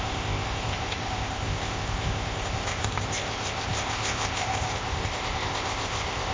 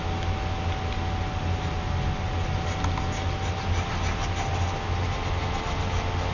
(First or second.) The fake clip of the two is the first